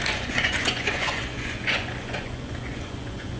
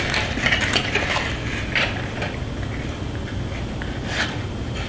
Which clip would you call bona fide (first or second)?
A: second